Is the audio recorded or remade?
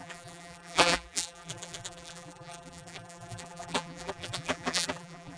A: remade